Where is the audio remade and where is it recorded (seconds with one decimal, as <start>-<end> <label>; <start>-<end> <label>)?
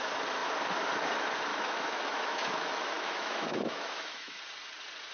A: 0.0-1.5 recorded; 1.5-4.4 remade; 4.4-5.1 recorded